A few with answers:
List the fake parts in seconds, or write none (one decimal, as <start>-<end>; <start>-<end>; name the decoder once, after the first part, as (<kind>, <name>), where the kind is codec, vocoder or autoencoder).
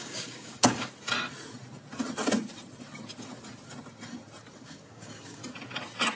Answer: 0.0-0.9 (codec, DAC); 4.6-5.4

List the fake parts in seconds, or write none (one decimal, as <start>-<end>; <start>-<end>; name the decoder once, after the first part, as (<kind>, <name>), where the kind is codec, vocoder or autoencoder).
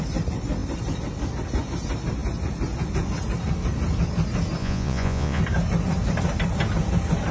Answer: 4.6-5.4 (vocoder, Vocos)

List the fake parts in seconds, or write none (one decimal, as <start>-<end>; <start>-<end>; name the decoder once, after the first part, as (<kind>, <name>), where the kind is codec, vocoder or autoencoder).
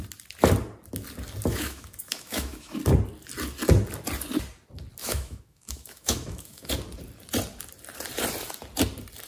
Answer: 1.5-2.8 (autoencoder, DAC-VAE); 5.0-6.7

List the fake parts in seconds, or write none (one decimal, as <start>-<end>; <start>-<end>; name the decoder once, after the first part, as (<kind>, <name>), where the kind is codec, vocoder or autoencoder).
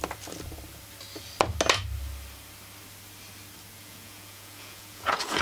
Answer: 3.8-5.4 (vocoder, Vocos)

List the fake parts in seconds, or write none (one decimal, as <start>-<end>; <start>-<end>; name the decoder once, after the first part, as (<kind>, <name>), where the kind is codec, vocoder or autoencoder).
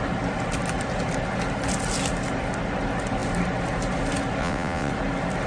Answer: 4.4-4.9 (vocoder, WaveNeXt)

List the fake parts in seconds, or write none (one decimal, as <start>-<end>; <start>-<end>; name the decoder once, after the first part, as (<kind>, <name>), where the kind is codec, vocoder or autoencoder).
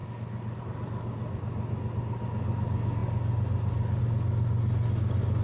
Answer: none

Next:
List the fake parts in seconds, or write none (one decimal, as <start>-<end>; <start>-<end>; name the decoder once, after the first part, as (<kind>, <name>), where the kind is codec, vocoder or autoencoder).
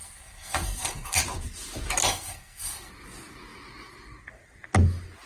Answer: 0.0-1.2 (codec, SNAC); 2.0-2.9